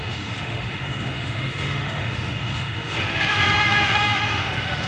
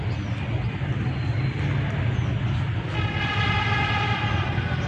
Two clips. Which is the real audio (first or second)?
second